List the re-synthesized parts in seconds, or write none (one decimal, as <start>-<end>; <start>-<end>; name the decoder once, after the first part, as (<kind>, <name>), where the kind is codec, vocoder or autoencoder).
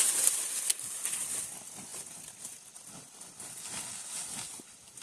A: none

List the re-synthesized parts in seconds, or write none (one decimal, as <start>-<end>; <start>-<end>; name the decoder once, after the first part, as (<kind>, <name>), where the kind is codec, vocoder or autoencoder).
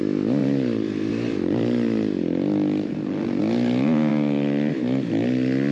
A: 0.4-3.4 (vocoder, BigVGAN v2); 4.1-4.7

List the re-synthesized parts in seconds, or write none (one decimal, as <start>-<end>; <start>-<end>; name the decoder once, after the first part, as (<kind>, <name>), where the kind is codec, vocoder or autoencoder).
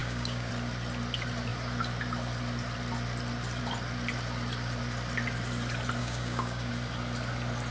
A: 0.0-0.5 (codec, DAC); 6.0-6.7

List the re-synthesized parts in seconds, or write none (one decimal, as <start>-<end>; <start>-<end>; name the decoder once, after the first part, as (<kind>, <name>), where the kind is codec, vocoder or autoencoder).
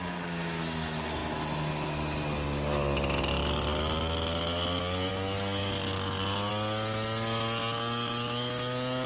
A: none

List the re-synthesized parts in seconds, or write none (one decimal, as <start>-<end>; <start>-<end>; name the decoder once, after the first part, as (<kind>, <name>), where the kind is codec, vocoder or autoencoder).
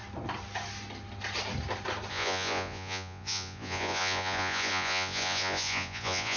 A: 2.1-6.4 (vocoder, Vocos)